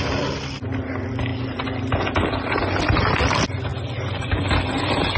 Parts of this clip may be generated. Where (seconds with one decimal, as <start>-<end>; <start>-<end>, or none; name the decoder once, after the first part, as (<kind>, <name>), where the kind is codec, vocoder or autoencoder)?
none